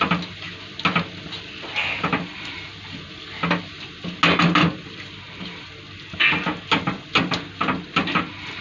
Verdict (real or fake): real